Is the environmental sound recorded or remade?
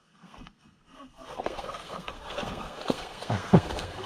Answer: remade